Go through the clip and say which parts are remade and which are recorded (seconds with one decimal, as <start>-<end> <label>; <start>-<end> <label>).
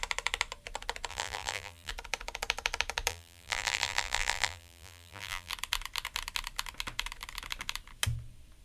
0.0-1.1 recorded; 1.1-1.9 remade; 1.9-3.1 recorded; 3.1-5.5 remade; 5.5-8.6 recorded